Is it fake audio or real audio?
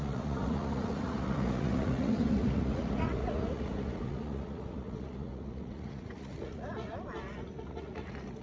fake